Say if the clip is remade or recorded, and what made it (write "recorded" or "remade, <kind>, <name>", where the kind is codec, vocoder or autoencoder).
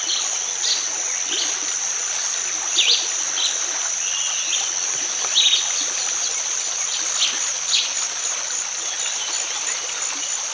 recorded